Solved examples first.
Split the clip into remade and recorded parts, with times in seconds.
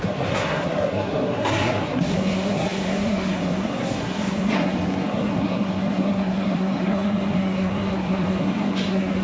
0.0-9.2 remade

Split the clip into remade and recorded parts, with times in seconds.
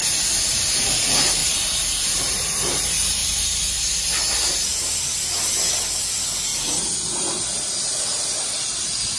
0.0-1.4 recorded; 1.4-2.2 remade; 2.2-6.5 recorded; 6.5-7.3 remade; 7.3-9.2 recorded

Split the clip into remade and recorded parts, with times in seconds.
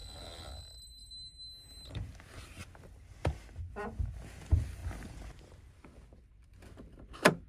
0.0-7.5 recorded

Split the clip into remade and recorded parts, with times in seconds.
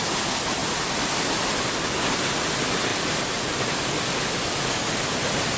0.0-5.6 recorded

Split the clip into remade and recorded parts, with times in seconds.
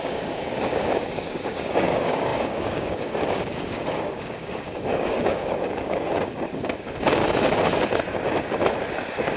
0.0-7.2 remade; 7.2-9.4 recorded